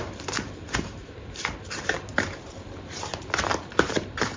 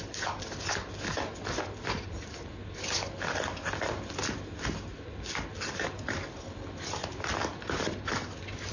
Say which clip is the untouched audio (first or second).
second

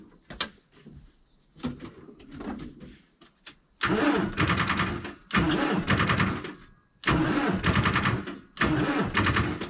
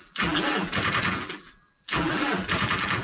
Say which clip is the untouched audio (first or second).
first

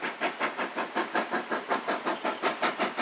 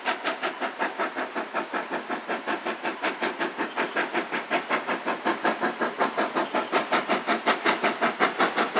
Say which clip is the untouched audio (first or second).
second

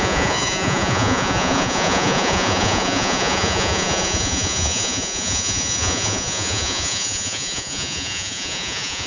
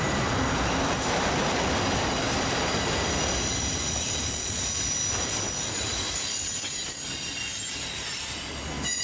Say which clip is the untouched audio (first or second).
second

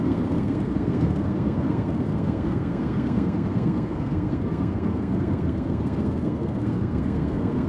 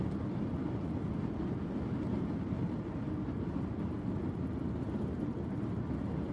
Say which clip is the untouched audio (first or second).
second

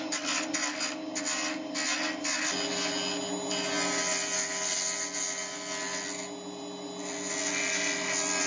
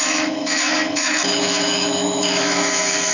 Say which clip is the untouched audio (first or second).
first